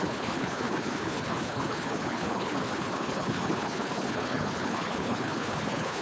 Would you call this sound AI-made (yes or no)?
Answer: yes